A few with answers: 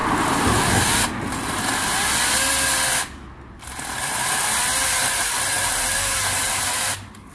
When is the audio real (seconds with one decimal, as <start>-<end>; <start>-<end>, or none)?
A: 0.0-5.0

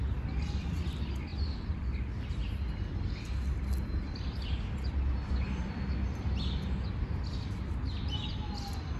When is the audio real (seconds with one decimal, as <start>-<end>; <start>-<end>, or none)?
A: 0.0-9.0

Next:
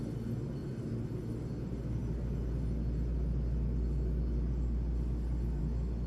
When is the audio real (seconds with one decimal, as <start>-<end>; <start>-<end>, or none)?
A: 0.0-6.1

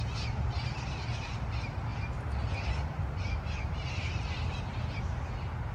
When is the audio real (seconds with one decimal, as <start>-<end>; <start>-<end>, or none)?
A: 0.0-1.9; 4.6-5.7

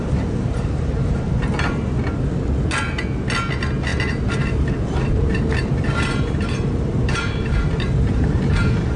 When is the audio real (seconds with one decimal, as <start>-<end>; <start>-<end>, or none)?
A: 0.0-0.4; 1.2-3.9